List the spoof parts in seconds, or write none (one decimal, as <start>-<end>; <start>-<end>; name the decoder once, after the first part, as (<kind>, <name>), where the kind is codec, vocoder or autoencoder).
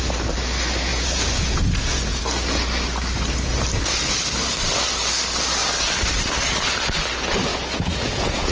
0.9-2.2 (vocoder, Vocos); 7.5-8.5